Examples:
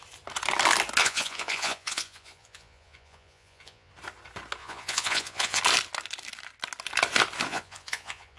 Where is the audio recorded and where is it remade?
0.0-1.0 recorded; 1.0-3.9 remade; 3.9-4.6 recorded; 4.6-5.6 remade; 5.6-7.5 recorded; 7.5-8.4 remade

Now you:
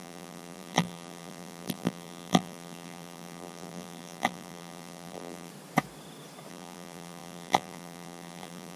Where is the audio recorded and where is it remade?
0.0-5.5 remade; 5.5-6.5 recorded; 6.5-8.8 remade

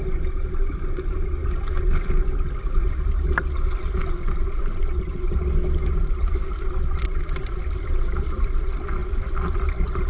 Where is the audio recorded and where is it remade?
0.0-10.1 recorded

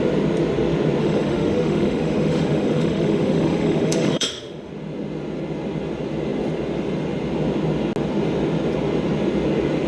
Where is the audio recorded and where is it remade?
0.0-1.0 recorded; 1.0-4.7 remade; 4.7-9.9 recorded

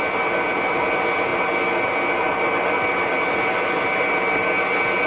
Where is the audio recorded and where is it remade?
0.0-5.1 recorded

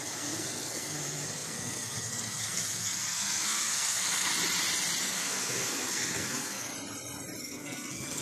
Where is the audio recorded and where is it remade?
0.0-4.3 remade; 4.3-5.0 recorded; 5.0-6.7 remade; 6.7-7.4 recorded; 7.4-8.2 remade

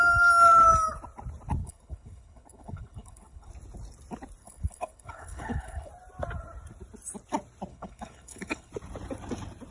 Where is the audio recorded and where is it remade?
0.0-1.6 recorded; 1.6-3.5 remade; 3.5-4.4 recorded; 4.4-5.9 remade; 5.9-7.7 recorded; 7.7-8.7 remade; 8.7-9.7 recorded